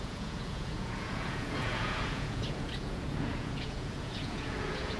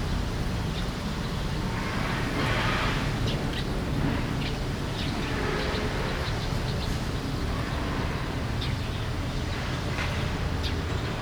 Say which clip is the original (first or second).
second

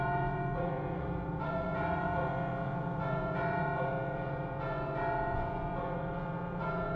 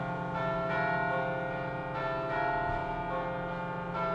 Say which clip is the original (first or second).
second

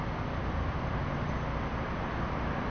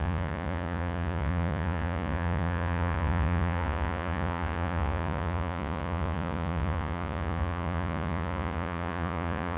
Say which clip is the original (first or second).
first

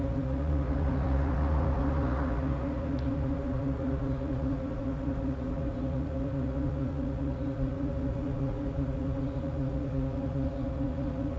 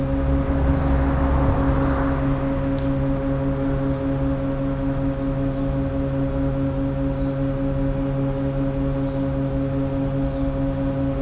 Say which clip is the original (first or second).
second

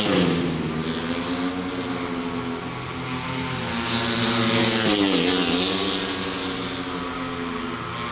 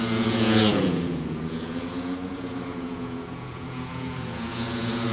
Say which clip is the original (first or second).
first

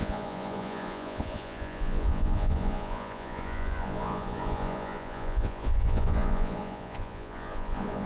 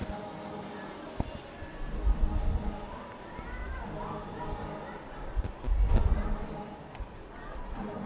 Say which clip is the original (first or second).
second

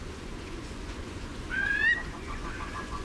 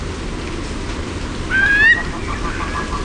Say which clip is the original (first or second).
second